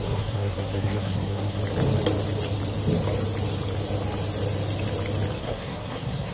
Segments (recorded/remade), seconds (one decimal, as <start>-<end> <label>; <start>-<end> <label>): 0.0-1.6 remade; 1.6-5.4 recorded; 5.4-6.3 remade

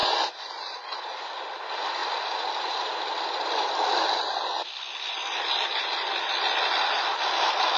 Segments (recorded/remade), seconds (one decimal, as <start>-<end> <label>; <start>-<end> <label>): 0.0-7.8 recorded